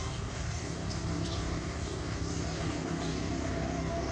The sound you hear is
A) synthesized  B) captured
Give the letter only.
A